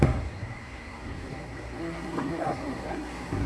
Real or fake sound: fake